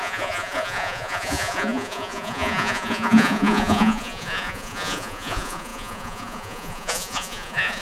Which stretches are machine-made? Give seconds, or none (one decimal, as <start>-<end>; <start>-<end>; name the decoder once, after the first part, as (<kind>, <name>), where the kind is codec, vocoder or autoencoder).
0.0-7.8 (vocoder, Vocos)